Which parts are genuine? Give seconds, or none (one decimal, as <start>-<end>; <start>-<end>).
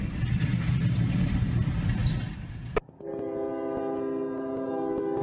0.0-5.2